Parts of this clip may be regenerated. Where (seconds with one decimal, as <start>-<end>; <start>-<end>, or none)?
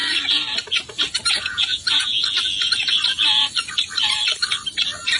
1.3-2.1